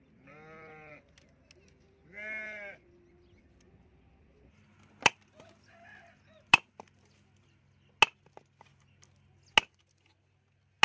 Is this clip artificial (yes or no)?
no